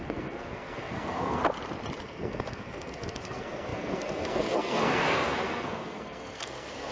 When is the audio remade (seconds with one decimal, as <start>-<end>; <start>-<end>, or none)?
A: 0.0-1.4; 2.0-6.9